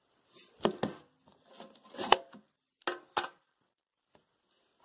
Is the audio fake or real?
real